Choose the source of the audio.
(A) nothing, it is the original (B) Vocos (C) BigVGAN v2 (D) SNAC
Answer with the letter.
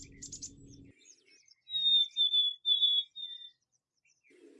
A